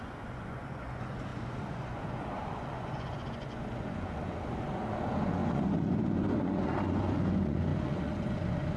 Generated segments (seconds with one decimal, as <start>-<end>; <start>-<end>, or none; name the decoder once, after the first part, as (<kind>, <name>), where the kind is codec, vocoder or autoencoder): 0.0-8.8 (vocoder, Vocos)